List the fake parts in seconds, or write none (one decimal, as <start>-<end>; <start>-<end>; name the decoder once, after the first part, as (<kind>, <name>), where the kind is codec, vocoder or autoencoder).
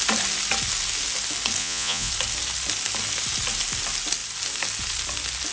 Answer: 1.6-2.1 (vocoder, Vocos)